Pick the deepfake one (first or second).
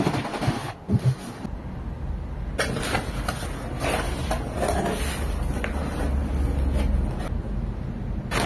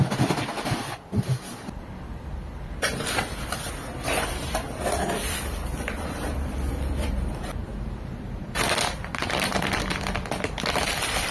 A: second